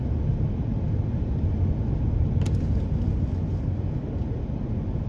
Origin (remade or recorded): recorded